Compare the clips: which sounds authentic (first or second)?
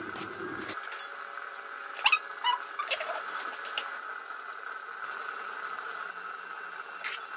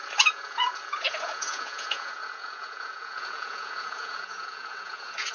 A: first